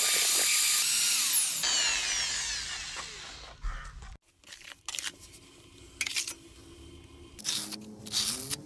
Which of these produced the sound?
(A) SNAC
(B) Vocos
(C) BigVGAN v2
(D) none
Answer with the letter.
D